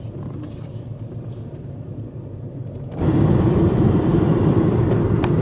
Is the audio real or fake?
fake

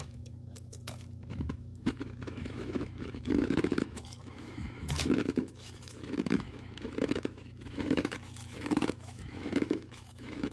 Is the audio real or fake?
fake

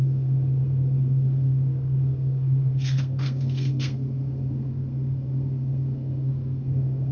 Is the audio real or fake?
fake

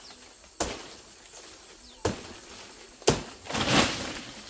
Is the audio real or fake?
real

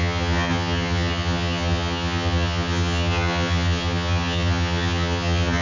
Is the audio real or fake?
fake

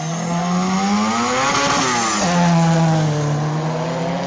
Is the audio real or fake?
real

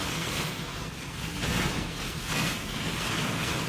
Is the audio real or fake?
fake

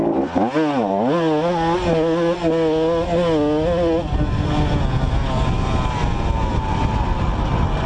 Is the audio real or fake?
real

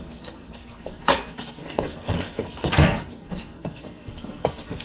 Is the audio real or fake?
fake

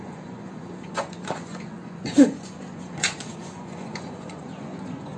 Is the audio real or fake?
fake